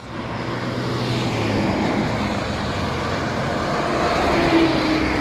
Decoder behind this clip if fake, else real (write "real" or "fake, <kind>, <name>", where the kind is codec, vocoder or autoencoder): real